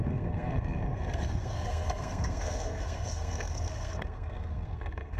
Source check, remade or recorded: remade